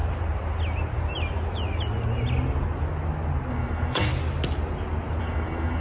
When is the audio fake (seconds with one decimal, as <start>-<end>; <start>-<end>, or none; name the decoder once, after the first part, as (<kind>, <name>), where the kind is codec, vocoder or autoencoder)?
3.5-4.1 (autoencoder, DAC-VAE); 5.2-5.8